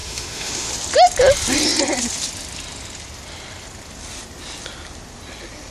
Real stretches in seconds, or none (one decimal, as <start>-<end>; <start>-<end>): 0.7-5.7